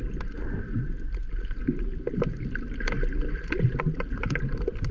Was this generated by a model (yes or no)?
no